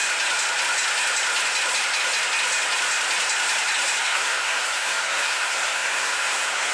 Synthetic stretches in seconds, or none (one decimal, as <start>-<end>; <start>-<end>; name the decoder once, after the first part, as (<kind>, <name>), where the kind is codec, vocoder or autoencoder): 4.0-6.7 (codec, SNAC)